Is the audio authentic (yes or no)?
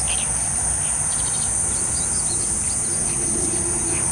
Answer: yes